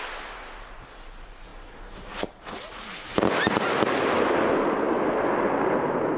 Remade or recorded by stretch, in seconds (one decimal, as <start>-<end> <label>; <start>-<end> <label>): 0.0-6.2 recorded